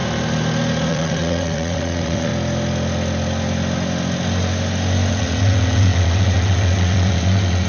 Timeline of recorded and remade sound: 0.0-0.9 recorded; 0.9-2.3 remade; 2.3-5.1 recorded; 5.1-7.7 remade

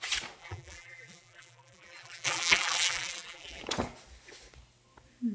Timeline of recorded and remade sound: 0.0-0.4 recorded; 0.4-3.6 remade; 3.6-5.3 recorded

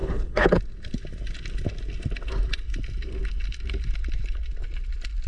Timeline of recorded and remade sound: 0.0-0.6 remade; 0.6-5.3 recorded